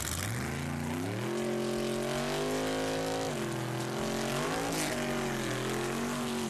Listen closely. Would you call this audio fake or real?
real